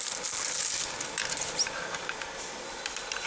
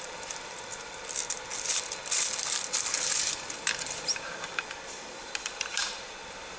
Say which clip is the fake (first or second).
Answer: second